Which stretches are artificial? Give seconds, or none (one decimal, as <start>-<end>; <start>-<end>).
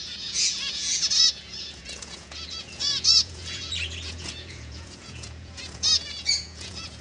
0.0-7.0